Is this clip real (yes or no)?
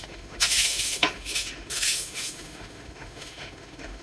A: no